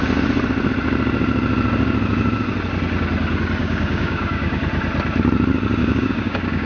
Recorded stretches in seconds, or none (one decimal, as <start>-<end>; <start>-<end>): 0.0-3.6; 4.6-5.8